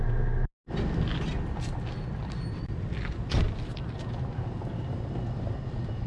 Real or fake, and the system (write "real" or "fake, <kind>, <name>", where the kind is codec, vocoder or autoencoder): real